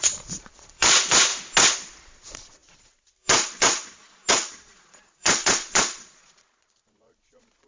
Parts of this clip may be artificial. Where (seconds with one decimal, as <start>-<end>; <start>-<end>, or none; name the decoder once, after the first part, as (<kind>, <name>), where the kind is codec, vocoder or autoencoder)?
0.0-1.3 (vocoder, Vocos); 2.0-7.7